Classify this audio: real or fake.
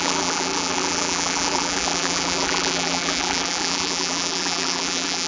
fake